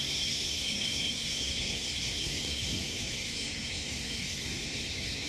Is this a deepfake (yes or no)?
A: yes